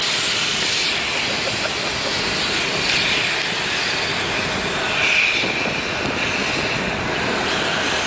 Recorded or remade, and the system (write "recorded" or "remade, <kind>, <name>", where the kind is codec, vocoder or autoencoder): recorded